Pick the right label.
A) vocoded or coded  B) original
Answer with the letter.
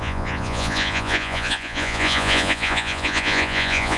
A